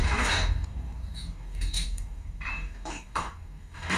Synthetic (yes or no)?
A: yes